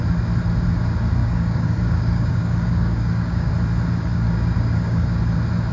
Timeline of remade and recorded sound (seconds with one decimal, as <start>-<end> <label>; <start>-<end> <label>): 0.0-1.2 recorded; 1.2-3.5 remade; 3.5-4.1 recorded; 4.1-5.2 remade; 5.2-5.7 recorded